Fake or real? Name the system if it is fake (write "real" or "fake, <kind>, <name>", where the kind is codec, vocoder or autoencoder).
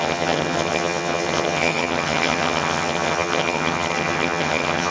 fake, vocoder, HiFi-GAN